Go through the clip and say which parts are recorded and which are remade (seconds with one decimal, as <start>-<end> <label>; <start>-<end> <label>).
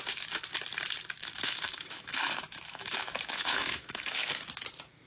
0.0-1.2 recorded; 1.2-4.3 remade; 4.3-5.1 recorded